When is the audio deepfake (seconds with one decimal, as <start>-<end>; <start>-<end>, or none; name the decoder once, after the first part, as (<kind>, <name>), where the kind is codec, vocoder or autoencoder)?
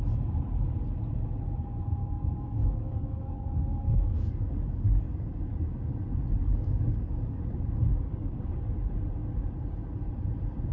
2.0-5.0 (codec, DAC); 6.4-7.4; 7.9-8.5